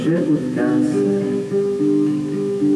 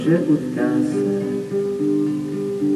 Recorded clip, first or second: second